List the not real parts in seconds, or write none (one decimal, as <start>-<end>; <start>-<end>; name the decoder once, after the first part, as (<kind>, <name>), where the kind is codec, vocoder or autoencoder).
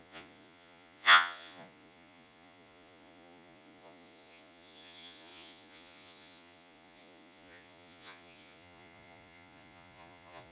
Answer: 0.0-10.5 (vocoder, Vocos)